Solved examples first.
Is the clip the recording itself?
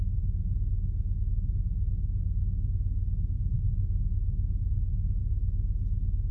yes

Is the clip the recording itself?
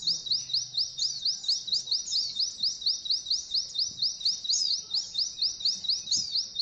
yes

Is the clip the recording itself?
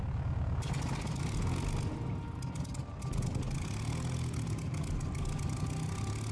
yes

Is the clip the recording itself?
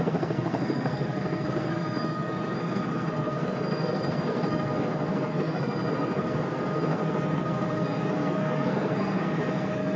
no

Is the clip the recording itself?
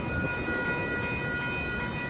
yes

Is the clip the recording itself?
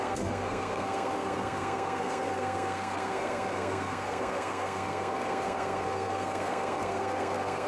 no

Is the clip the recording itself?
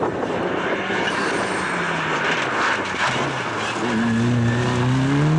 yes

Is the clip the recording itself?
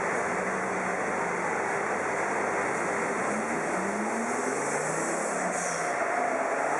yes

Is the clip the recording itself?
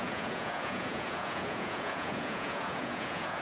no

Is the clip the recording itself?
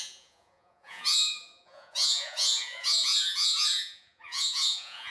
no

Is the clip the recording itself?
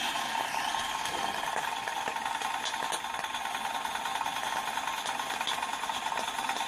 yes